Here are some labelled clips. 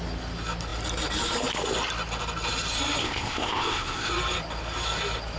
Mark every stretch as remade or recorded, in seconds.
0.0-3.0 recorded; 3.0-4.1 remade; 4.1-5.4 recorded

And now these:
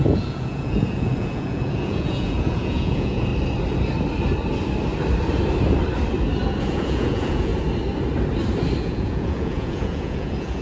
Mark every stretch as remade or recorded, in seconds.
0.0-3.3 remade; 3.3-6.6 recorded; 6.6-7.5 remade; 7.5-8.8 recorded; 8.8-10.6 remade